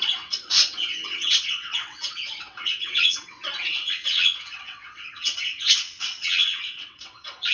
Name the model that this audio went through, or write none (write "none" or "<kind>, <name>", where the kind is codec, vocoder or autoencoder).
vocoder, WaveNeXt